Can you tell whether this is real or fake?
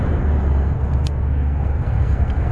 fake